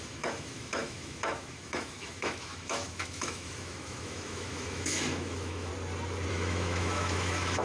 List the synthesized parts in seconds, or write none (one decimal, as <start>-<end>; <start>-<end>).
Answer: 0.0-5.7; 6.3-7.6